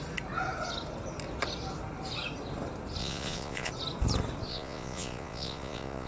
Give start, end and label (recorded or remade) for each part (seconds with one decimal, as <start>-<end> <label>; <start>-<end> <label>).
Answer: 0.0-3.0 recorded; 3.0-3.7 remade; 3.7-4.5 recorded; 4.5-6.1 remade